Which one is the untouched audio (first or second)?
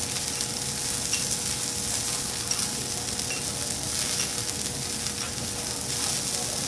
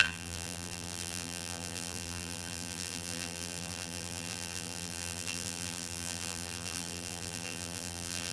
first